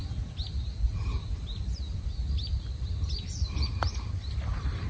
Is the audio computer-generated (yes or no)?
no